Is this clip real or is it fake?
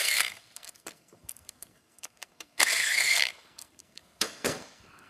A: fake